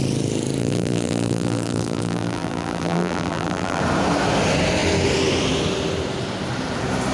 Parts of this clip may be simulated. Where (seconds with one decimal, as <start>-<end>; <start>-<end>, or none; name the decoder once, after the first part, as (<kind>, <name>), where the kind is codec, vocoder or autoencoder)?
0.6-3.8 (vocoder, BigVGAN v2)